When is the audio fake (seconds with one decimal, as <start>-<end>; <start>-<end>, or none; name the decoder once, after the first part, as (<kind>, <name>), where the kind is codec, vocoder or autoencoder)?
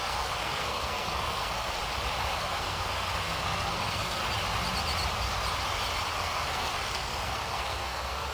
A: 0.0-1.8 (codec, SNAC); 2.4-4.2; 6.2-8.3